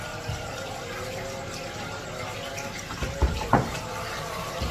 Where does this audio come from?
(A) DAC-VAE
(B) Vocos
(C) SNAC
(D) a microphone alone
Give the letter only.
D